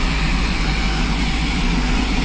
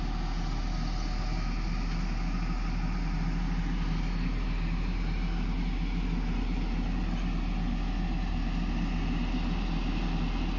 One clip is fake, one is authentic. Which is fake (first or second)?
first